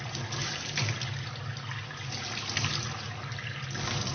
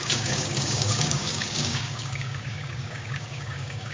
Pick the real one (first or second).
first